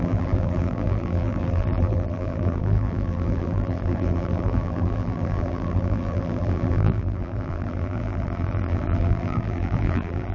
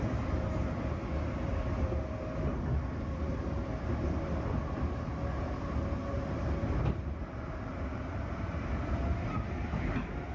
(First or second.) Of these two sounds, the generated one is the first